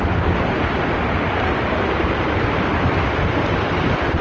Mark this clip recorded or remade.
recorded